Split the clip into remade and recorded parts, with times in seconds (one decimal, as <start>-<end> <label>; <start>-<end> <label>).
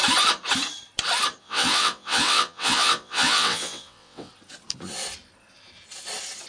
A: 0.0-1.4 recorded; 1.4-4.3 remade; 4.3-6.5 recorded